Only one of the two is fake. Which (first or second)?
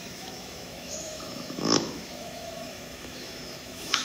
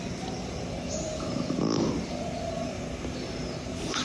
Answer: first